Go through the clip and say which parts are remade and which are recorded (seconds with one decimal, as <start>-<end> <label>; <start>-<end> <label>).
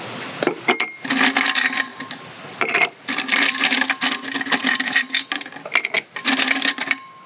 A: 0.0-1.9 recorded; 1.9-4.8 remade; 4.8-7.3 recorded